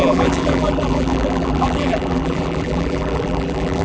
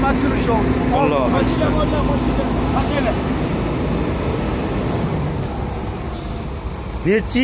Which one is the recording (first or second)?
second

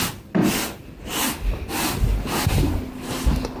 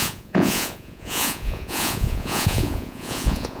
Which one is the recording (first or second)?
first